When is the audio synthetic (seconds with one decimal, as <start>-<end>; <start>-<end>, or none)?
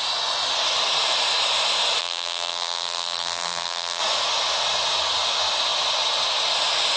2.0-4.0